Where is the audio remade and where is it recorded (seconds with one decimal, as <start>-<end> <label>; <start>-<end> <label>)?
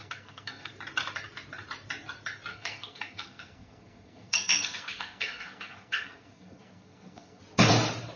0.0-0.7 remade; 0.7-2.5 recorded; 2.5-7.4 remade; 7.4-8.2 recorded